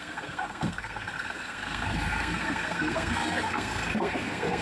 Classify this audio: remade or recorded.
remade